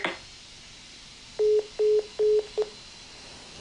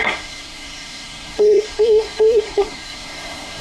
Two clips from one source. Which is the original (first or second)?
first